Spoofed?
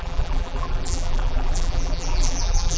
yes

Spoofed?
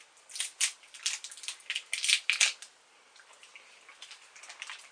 no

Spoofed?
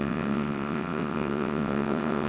yes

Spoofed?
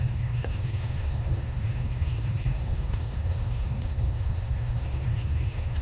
yes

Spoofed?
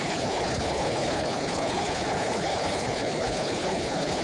yes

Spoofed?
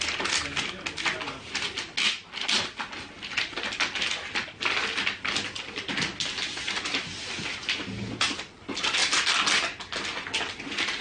no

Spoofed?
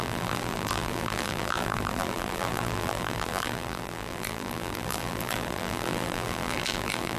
yes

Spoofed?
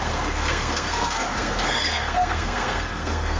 yes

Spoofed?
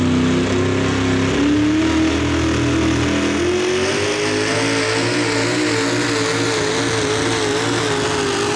no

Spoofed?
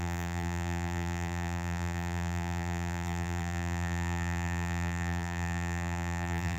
yes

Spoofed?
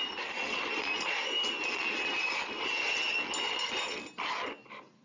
no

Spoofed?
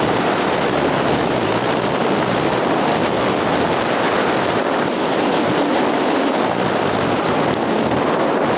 no